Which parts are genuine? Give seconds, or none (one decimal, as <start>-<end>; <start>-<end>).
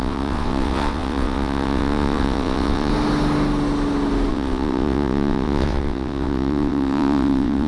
2.9-4.3